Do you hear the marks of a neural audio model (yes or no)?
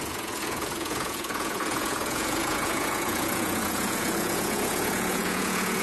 yes